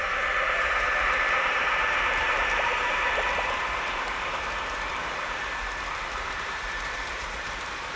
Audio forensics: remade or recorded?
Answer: remade